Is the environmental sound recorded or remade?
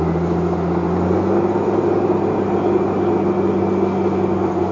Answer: recorded